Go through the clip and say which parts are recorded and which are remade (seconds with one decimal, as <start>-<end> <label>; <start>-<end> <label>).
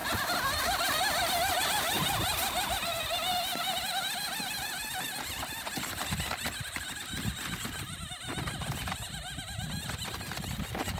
0.0-2.0 remade; 2.0-2.8 recorded; 2.8-11.0 remade